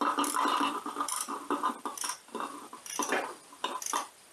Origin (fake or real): real